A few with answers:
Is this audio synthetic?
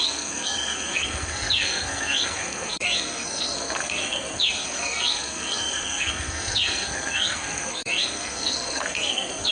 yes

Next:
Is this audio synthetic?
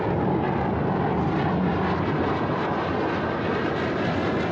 no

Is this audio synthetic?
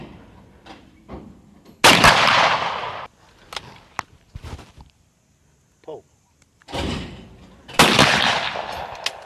no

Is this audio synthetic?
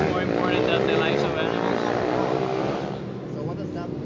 no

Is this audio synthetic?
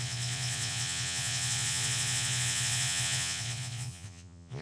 yes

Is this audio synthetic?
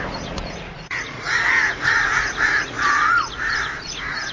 yes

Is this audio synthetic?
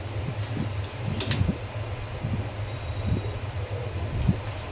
no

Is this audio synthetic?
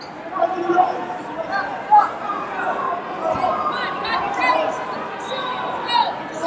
no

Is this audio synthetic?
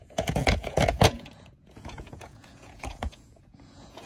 yes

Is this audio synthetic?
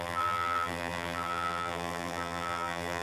yes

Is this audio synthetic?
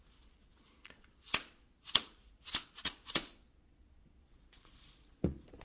yes